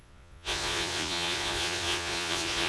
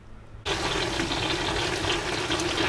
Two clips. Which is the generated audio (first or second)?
first